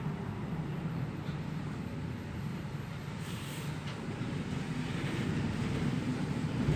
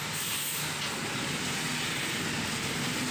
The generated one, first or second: first